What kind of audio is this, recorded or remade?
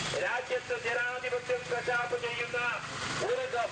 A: recorded